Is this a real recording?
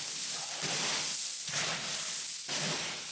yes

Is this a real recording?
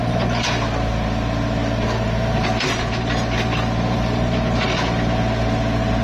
yes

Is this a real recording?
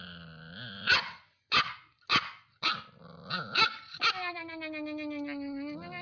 yes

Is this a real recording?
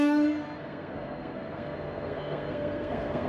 no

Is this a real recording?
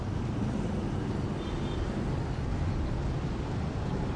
yes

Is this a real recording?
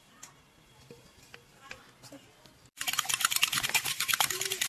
yes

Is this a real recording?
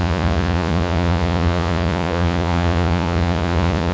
no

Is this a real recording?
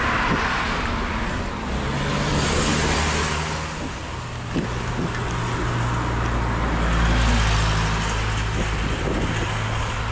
yes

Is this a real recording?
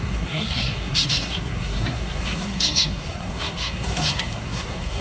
no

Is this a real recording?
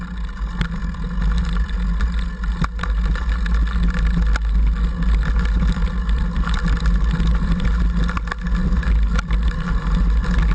yes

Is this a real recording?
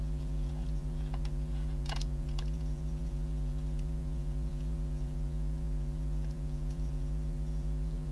no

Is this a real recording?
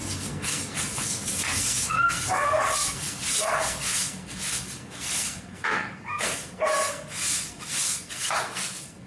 no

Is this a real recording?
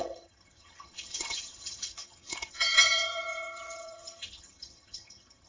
no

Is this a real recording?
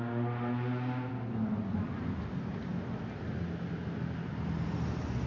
yes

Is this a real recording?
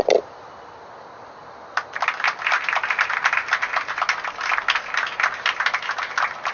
yes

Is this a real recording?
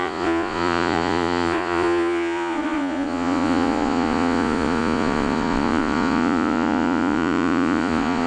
no